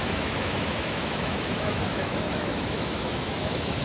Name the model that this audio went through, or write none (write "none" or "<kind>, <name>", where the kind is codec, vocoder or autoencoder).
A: autoencoder, DAC-VAE